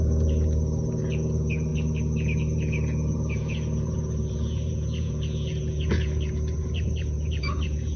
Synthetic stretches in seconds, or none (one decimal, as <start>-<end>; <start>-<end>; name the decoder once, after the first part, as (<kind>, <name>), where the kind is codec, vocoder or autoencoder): 0.0-8.0 (vocoder, Vocos)